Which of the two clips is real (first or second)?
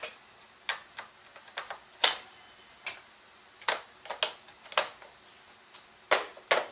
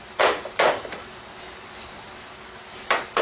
first